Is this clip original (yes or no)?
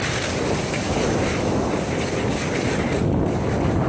yes